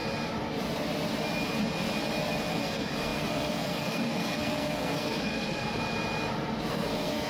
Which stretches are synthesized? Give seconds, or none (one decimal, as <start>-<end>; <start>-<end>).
2.5-5.8; 6.7-7.3